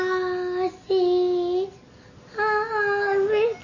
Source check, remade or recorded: recorded